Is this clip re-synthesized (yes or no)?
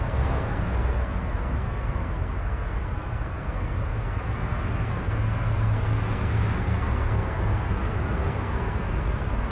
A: yes